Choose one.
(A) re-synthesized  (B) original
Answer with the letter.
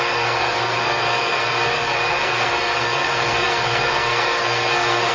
A